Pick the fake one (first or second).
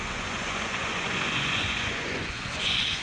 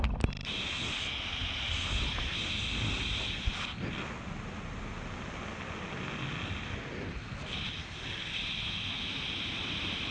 first